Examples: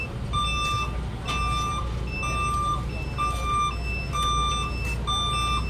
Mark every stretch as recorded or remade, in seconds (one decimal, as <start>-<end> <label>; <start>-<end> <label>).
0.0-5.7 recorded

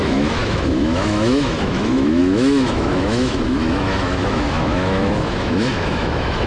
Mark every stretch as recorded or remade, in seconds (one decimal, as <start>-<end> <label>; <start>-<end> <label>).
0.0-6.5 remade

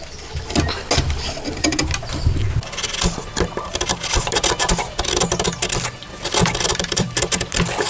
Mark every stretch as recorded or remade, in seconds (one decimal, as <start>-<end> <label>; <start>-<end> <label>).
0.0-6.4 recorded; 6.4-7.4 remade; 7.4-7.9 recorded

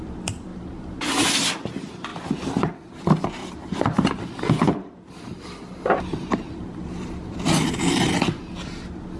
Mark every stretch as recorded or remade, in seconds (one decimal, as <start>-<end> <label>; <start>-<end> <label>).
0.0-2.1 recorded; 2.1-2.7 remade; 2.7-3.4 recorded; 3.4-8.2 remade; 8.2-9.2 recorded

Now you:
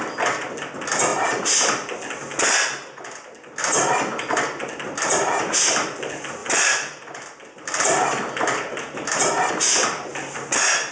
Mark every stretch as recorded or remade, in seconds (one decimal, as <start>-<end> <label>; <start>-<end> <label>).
0.0-6.4 recorded; 6.4-9.5 remade; 9.5-10.9 recorded

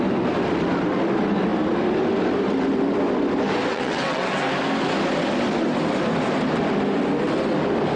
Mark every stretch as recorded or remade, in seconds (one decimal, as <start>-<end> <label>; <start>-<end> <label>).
0.0-3.7 recorded; 3.7-4.4 remade; 4.4-8.0 recorded

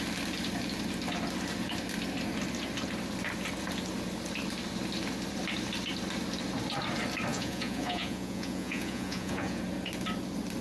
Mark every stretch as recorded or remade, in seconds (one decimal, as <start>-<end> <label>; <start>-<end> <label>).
0.0-7.3 recorded; 7.3-9.6 remade; 9.6-10.6 recorded